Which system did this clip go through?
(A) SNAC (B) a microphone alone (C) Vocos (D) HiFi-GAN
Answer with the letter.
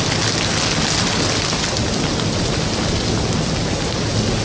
B